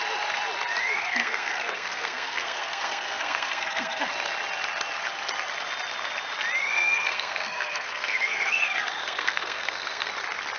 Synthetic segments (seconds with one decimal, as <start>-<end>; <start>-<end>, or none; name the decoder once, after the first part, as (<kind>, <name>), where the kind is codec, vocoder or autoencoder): 0.8-4.1 (codec, SNAC); 6.6-10.1